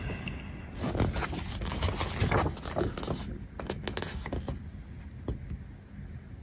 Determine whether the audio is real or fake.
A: real